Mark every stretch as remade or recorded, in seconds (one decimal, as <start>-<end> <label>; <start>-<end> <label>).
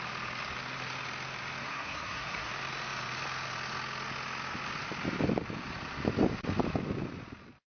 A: 0.0-1.6 recorded; 1.6-2.5 remade; 2.5-7.8 recorded